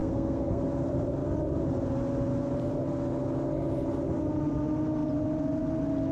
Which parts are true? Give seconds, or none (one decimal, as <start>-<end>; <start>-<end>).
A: 0.6-6.1

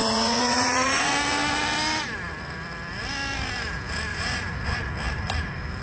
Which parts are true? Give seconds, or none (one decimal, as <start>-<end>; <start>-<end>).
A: 1.1-4.1; 4.9-5.8

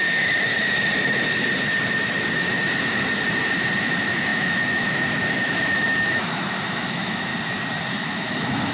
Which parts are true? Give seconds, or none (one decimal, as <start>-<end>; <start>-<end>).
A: 0.5-3.8; 7.3-7.9

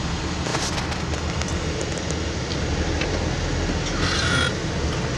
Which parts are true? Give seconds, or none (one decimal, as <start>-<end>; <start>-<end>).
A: 0.0-5.2

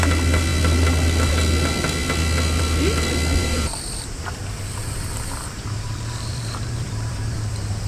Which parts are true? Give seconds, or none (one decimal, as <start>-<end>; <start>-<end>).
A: 0.0-3.4; 4.0-4.8; 7.5-7.9

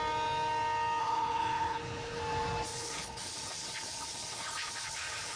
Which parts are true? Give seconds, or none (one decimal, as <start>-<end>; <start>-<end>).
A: 0.0-1.0; 2.2-2.7